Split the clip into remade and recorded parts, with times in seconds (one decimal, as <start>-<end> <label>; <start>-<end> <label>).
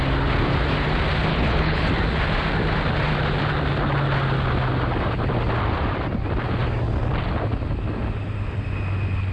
0.0-1.3 recorded; 1.3-1.9 remade; 1.9-9.3 recorded